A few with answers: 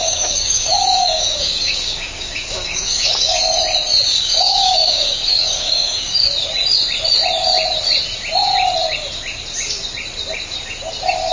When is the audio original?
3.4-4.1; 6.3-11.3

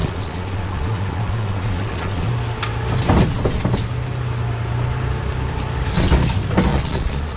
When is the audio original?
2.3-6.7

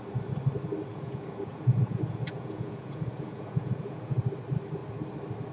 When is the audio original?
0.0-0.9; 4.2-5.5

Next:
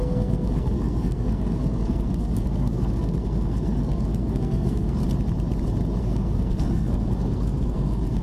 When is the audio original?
5.0-6.0